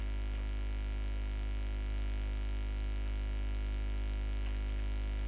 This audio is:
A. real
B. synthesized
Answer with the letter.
A